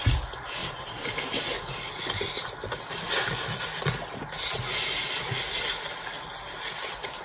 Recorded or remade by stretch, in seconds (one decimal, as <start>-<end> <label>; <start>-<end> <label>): 0.0-0.6 recorded; 0.6-1.2 remade; 1.2-7.2 recorded